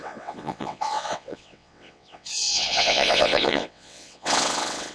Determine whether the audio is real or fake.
fake